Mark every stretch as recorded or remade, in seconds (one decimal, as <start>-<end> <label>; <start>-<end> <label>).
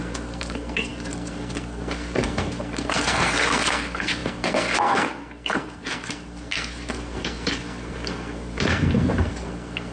0.0-9.9 remade